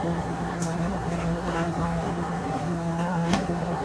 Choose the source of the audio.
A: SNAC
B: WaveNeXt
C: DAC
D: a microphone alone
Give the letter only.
A